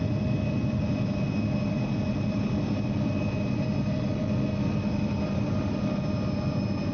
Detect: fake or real real